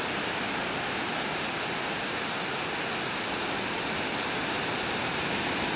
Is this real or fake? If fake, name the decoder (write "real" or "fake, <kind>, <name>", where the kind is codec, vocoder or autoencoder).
real